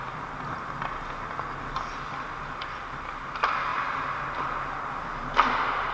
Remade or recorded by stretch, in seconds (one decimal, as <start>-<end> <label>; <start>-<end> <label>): 0.0-5.9 recorded